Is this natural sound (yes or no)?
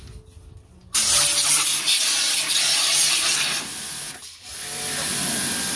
yes